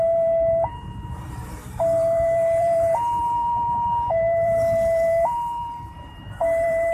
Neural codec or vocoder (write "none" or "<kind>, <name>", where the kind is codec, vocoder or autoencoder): vocoder, BigVGAN v2